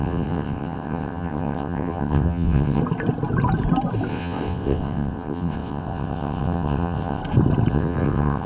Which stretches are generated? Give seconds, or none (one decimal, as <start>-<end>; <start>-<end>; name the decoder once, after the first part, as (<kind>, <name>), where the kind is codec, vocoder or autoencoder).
0.0-2.8 (vocoder, WaveNeXt); 4.1-7.2; 7.7-8.5